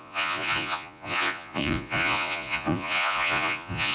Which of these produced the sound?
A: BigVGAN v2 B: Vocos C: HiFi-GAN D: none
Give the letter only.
B